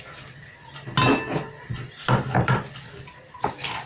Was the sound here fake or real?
real